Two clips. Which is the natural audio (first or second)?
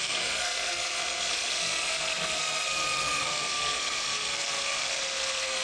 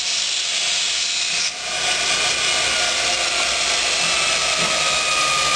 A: second